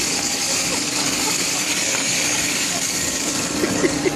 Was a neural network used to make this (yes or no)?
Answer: yes